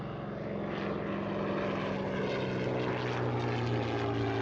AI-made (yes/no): no